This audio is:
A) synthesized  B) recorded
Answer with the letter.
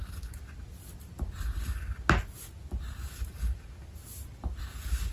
B